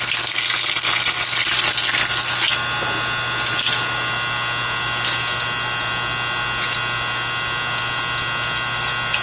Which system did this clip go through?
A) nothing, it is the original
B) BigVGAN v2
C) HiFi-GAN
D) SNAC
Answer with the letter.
A